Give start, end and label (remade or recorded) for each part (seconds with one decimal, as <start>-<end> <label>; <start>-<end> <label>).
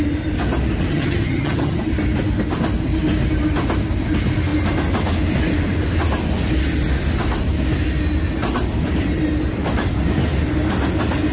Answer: 0.0-0.9 recorded; 0.9-1.8 remade; 1.8-11.3 recorded